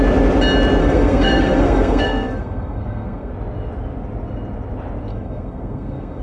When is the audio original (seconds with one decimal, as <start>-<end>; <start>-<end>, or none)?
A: 0.0-0.8; 3.3-5.1